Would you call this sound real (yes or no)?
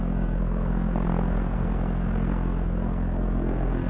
no